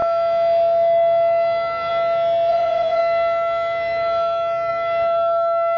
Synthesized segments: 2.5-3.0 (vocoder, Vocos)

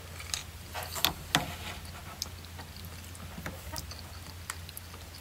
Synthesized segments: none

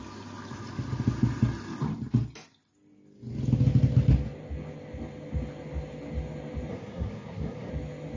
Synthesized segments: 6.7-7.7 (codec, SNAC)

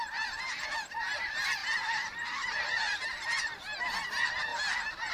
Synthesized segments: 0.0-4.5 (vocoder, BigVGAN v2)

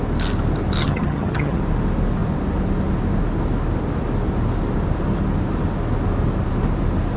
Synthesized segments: 0.8-1.6 (vocoder, HiFi-GAN)

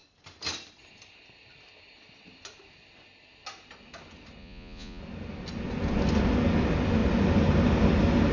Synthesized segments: 4.4-5.0 (vocoder, Vocos)